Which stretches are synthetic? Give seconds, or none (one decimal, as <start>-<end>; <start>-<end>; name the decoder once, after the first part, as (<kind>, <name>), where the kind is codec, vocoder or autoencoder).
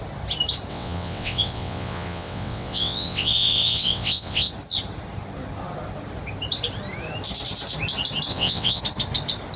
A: 0.7-4.5 (vocoder, WaveNeXt); 8.3-8.8